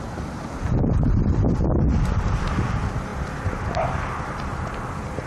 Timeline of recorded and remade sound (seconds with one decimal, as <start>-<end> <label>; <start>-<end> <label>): 0.0-5.3 recorded